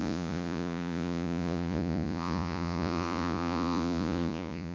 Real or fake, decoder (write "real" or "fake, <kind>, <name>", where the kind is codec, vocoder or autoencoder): fake, vocoder, Vocos